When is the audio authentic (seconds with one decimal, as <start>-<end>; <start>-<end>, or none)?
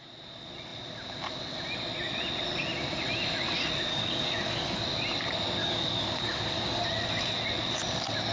0.0-3.9; 4.8-5.6; 6.8-8.3